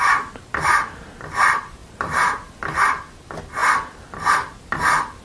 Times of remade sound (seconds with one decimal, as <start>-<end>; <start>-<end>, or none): 1.8-2.6